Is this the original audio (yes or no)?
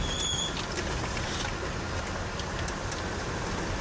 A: yes